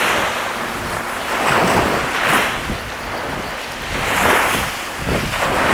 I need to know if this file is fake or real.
real